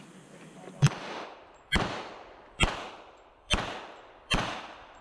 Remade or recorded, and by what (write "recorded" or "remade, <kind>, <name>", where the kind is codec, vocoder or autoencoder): remade, vocoder, BigVGAN v2